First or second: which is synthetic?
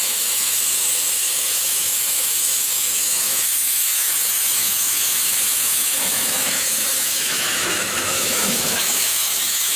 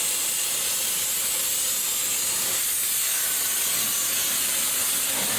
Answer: first